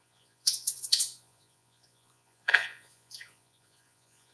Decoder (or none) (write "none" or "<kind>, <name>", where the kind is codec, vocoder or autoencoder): vocoder, Vocos